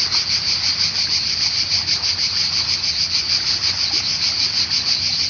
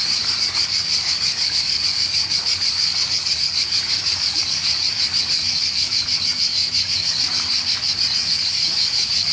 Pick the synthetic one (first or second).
second